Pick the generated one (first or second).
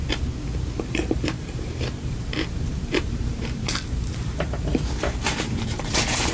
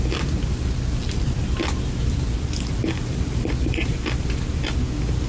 first